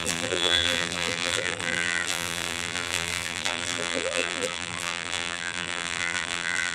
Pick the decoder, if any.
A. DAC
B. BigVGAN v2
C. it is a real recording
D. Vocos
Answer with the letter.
B